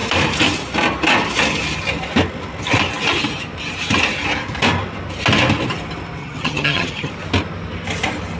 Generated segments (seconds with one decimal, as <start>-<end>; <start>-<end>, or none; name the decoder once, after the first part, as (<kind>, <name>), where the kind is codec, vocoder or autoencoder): 6.2-7.1 (vocoder, HiFi-GAN)